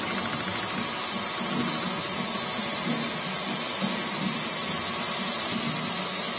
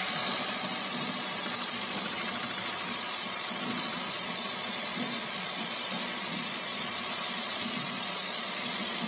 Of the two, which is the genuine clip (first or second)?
first